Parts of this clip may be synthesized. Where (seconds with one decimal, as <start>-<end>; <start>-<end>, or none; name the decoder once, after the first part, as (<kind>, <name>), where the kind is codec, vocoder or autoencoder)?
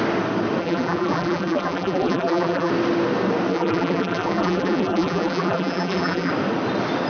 0.6-2.7 (vocoder, BigVGAN v2); 3.5-6.3